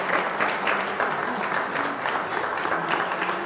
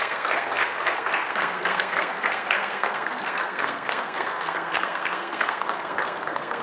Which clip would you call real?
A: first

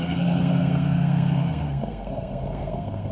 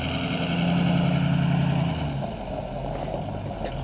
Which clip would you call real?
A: second